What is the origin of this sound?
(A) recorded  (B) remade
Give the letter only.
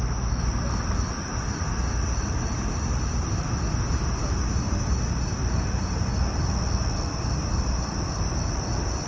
A